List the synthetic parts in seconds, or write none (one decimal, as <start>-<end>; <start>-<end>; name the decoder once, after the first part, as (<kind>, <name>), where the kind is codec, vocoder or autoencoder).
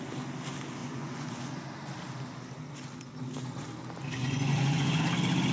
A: 0.8-1.6 (vocoder, Vocos); 4.2-5.0